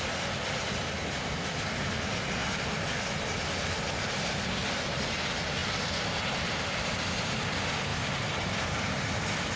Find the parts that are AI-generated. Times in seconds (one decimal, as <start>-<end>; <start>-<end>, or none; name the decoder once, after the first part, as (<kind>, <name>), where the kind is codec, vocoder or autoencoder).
5.6-7.1 (vocoder, BigVGAN v2); 7.9-9.1